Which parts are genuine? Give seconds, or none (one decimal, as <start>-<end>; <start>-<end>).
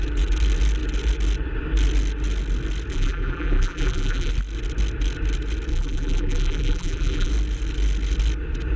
0.0-2.9; 4.3-5.7; 7.3-8.8